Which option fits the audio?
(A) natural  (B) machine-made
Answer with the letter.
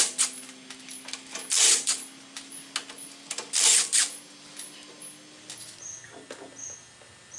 A